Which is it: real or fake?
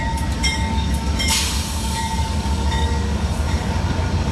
fake